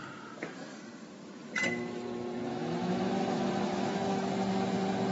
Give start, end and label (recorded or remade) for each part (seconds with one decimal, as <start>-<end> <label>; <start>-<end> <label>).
0.0-2.5 recorded; 2.5-4.3 remade; 4.3-5.1 recorded